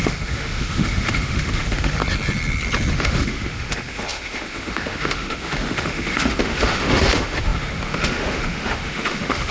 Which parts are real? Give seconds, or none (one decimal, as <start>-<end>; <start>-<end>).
2.0-2.9